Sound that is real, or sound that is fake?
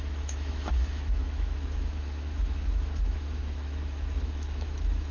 fake